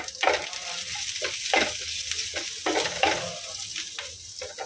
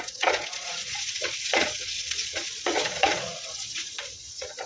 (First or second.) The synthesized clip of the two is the second